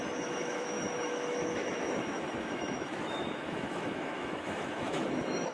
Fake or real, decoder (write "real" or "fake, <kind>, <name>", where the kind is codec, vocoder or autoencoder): fake, autoencoder, DAC-VAE